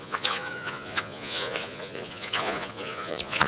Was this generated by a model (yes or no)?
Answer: yes